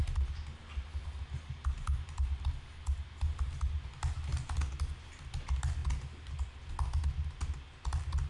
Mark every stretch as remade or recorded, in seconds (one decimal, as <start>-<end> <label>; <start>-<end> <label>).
0.0-8.3 recorded